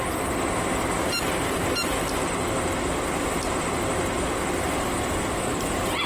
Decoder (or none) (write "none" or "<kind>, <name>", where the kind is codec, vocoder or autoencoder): none